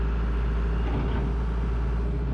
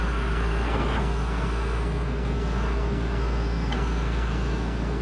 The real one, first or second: first